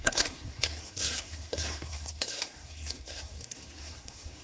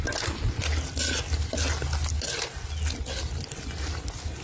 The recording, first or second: second